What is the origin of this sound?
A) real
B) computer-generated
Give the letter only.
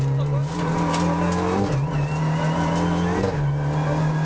A